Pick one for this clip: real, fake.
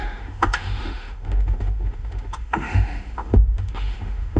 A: fake